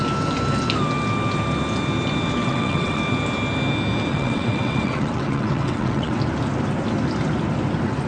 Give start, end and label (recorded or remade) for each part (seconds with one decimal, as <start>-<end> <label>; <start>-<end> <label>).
0.0-2.4 recorded; 2.4-3.0 remade; 3.0-4.1 recorded; 4.1-6.2 remade; 6.2-8.1 recorded